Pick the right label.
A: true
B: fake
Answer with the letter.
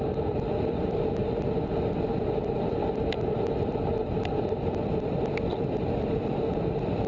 A